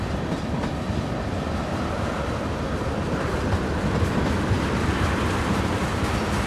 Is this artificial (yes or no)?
no